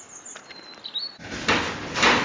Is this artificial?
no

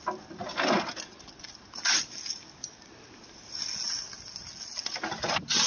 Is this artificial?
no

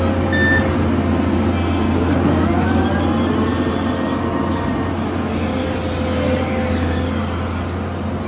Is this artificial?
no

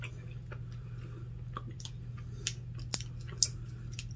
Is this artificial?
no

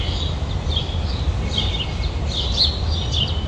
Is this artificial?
no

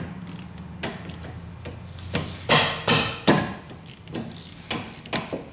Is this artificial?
no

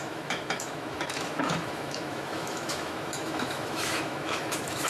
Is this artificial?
yes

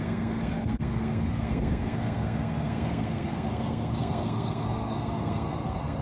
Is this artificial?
yes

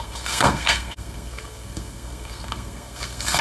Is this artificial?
yes